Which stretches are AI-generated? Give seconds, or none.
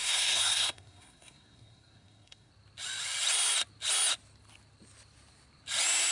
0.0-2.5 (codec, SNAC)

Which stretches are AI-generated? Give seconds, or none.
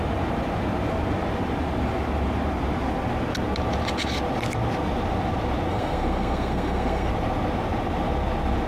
5.7-7.1 (codec, SNAC)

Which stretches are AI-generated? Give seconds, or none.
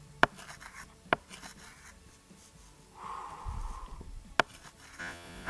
5.0-5.5 (vocoder, Vocos)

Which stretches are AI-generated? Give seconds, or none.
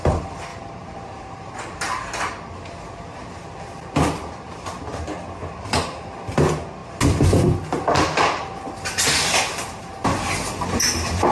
0.5-1.5 (vocoder, BigVGAN v2)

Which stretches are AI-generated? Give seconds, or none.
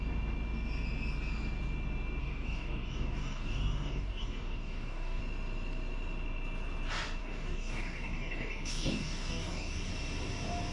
2.2-5.2 (codec, DAC); 7.2-9.9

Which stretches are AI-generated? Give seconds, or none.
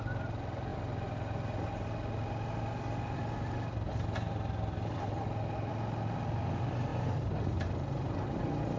none